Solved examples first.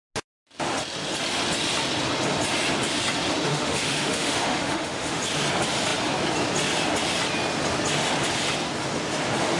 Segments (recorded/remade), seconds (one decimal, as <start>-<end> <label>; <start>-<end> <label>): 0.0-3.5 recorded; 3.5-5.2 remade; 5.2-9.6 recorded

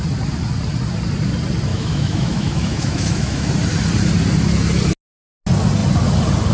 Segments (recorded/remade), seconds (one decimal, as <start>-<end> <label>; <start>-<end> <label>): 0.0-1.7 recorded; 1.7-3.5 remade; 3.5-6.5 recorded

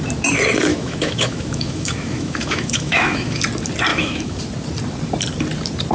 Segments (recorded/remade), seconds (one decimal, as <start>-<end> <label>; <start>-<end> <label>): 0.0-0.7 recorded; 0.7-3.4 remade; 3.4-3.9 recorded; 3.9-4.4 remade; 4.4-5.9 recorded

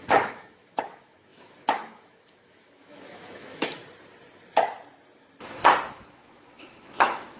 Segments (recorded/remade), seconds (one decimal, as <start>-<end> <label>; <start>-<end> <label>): 0.0-3.8 remade; 3.8-5.9 recorded; 5.9-7.4 remade